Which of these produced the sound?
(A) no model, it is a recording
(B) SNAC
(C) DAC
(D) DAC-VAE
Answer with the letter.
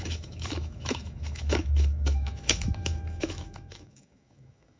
D